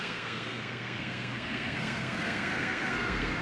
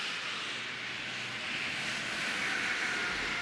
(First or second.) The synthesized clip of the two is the first